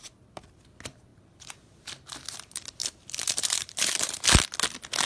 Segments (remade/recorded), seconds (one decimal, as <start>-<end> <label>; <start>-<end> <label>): 0.0-1.1 recorded; 1.1-2.3 remade; 2.3-2.8 recorded; 2.8-4.2 remade; 4.2-5.1 recorded

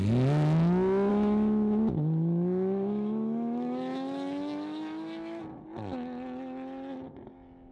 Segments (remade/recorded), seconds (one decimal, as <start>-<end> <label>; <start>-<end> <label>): 0.0-1.1 recorded; 1.1-5.4 remade; 5.4-7.7 recorded